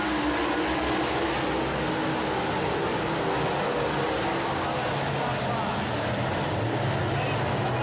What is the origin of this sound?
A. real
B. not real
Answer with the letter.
A